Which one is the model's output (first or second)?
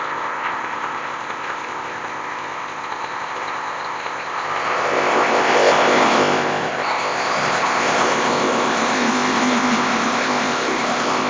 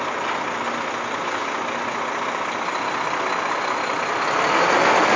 first